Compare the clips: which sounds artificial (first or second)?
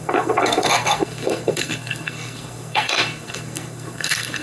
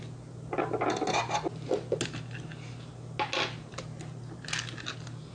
first